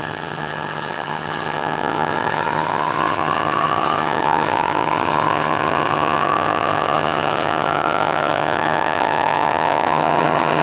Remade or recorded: remade